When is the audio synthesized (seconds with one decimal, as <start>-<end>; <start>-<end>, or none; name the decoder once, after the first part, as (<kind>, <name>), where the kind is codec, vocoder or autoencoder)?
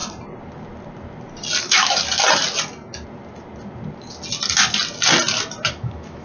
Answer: 1.6-2.0 (autoencoder, DAC-VAE); 5.7-6.2